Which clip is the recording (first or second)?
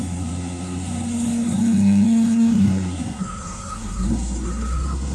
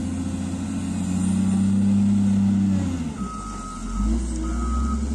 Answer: second